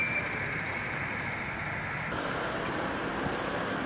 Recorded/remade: recorded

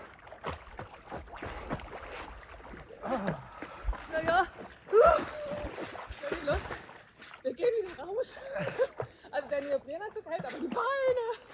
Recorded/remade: recorded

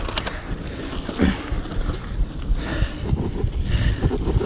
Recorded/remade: recorded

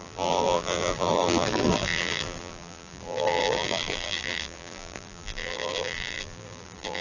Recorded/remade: remade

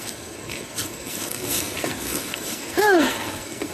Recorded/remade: remade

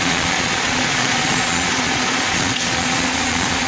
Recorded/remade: remade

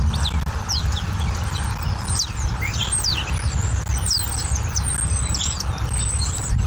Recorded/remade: recorded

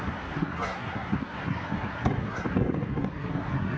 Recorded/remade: remade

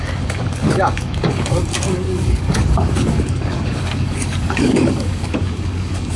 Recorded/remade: remade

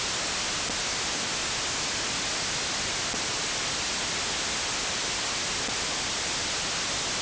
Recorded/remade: recorded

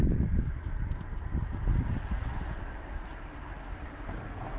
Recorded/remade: recorded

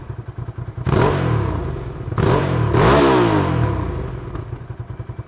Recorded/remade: recorded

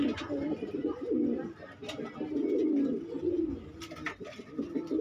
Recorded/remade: recorded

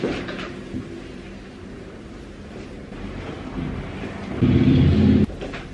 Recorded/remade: remade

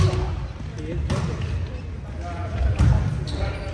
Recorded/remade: recorded